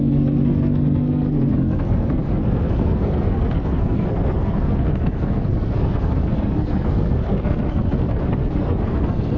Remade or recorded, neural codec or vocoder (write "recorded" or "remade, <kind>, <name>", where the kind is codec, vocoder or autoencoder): remade, codec, SNAC